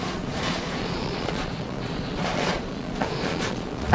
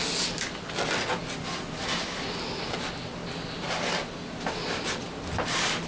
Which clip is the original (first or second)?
second